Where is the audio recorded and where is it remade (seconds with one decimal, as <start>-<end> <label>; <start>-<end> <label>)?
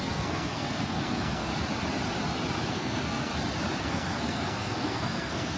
0.0-1.5 remade; 1.5-2.7 recorded; 2.7-3.3 remade; 3.3-3.8 recorded; 3.8-5.6 remade